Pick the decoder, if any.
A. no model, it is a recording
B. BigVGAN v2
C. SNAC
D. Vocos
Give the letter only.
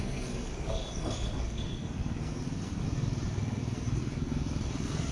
C